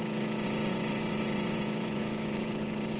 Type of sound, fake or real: fake